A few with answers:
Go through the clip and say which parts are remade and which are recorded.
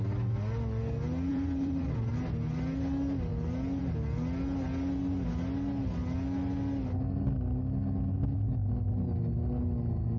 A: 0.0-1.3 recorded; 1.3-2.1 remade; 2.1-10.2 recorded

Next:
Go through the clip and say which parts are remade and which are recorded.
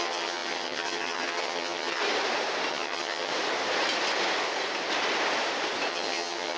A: 0.0-2.0 remade; 2.0-2.7 recorded; 2.7-3.3 remade; 3.3-5.9 recorded; 5.9-6.6 remade